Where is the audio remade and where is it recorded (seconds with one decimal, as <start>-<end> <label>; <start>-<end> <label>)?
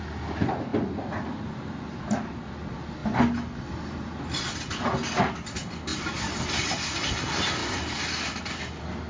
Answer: 0.0-9.1 recorded